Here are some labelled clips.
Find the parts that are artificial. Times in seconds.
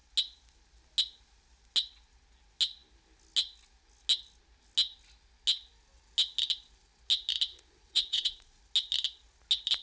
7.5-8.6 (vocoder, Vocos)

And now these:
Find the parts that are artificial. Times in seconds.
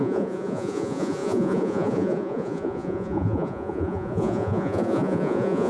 0.0-5.7 (vocoder, Vocos)